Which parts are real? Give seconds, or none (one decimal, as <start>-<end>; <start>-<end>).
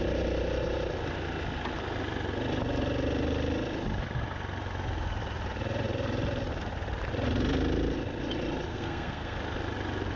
0.0-8.7; 9.4-10.2